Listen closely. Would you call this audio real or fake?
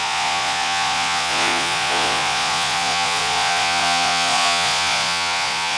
fake